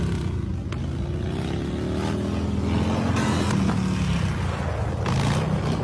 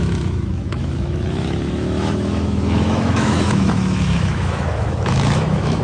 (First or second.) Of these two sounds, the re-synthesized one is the second